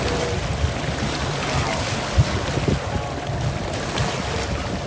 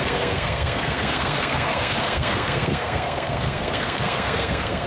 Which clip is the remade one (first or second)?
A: second